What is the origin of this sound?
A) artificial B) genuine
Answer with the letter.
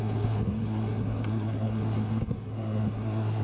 A